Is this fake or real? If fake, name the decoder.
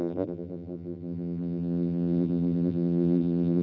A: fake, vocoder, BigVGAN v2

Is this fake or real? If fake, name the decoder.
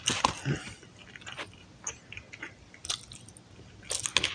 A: real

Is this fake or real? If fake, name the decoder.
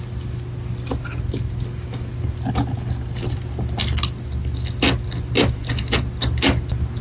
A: real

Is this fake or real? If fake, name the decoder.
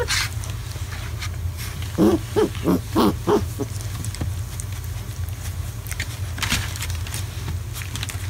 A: real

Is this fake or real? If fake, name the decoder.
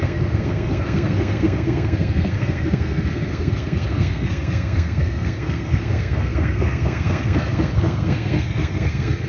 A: fake, codec, SNAC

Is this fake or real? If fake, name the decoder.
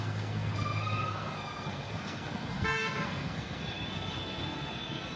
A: fake, codec, SNAC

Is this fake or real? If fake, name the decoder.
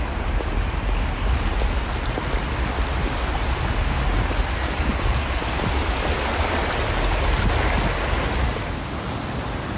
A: real